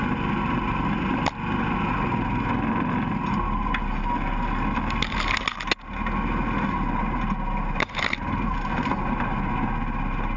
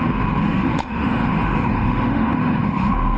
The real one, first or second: first